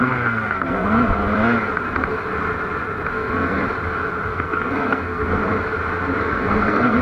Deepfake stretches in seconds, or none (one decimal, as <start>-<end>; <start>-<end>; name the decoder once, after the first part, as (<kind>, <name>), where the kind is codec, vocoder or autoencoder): 0.0-1.2 (codec, SNAC); 3.1-3.6; 4.3-5.4; 6.2-7.0